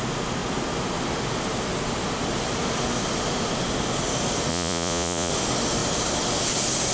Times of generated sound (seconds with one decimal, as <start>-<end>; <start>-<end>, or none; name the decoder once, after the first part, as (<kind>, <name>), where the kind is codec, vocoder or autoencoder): 4.5-5.3 (vocoder, Vocos)